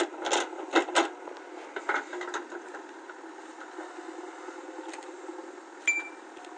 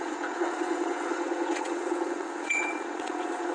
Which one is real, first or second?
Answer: first